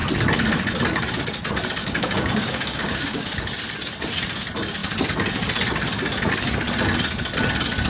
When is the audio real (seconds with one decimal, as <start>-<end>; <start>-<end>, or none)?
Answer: 0.0-1.8; 3.2-7.9